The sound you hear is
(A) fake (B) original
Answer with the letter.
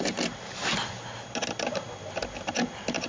B